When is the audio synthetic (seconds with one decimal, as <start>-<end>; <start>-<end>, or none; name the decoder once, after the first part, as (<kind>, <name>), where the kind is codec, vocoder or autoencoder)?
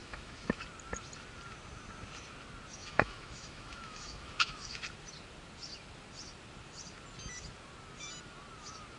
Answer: 0.0-0.6 (autoencoder, DAC-VAE); 2.8-4.8